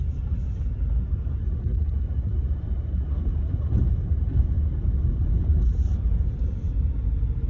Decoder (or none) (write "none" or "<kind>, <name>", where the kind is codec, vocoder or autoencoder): none